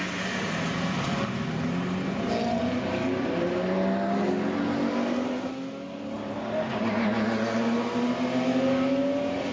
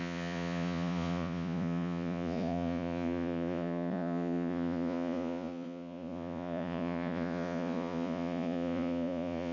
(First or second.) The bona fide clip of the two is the first